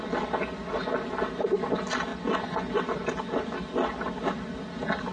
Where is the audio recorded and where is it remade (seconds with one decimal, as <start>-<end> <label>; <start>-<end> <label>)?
0.0-2.1 recorded; 2.1-2.7 remade; 2.7-5.1 recorded